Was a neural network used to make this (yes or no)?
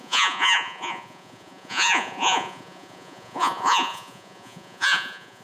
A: yes